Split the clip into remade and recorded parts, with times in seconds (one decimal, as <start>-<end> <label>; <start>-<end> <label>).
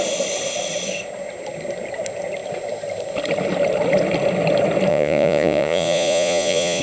0.0-4.9 recorded; 4.9-6.8 remade